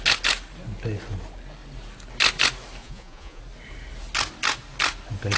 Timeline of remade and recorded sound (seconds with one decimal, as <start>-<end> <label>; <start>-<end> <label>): 0.0-2.8 recorded; 2.8-3.4 remade; 3.4-5.4 recorded